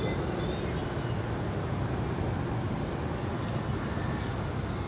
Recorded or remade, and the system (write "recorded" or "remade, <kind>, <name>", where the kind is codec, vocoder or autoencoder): recorded